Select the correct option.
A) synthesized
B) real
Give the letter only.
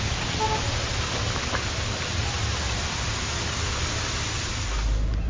B